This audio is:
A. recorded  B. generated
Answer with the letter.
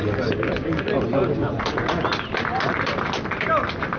A